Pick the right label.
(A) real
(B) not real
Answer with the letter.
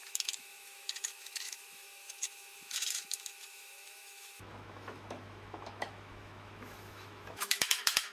B